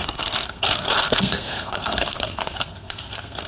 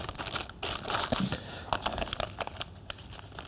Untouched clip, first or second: second